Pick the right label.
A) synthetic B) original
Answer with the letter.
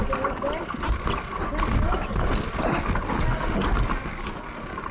B